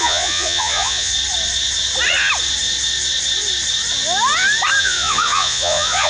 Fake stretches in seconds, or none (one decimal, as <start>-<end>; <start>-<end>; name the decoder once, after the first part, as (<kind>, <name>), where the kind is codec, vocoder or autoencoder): 0.0-1.1 (vocoder, Vocos); 4.8-6.1